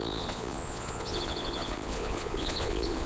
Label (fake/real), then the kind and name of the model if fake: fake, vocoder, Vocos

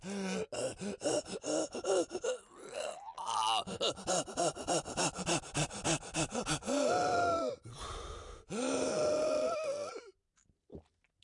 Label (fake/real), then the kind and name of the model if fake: real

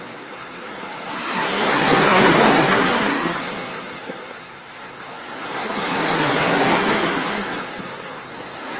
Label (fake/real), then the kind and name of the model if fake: fake, codec, SNAC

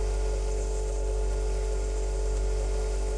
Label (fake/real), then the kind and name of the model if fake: real